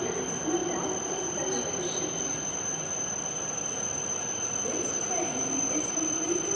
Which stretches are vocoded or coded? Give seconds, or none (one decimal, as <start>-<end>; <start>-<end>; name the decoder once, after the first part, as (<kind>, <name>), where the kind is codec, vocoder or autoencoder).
0.0-6.6 (vocoder, BigVGAN v2)